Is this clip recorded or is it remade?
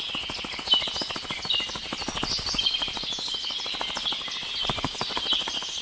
recorded